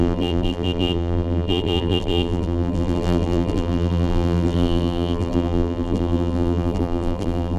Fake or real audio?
fake